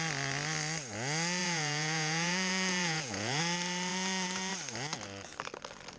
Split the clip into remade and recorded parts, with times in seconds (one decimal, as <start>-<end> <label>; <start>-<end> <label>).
0.0-1.4 recorded; 1.4-3.4 remade; 3.4-3.9 recorded; 3.9-4.5 remade; 4.5-6.0 recorded